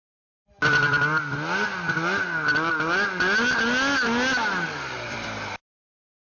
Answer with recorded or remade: recorded